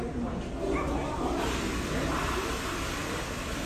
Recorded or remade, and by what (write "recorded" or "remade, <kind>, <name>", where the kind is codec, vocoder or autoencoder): recorded